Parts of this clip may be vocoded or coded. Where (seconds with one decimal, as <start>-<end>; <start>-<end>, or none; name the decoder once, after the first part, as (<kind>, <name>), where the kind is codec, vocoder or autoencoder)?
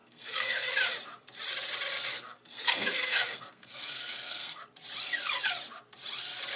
0.0-0.7 (codec, SNAC); 2.1-4.6